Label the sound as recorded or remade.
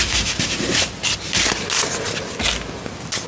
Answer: recorded